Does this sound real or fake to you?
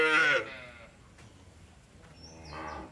real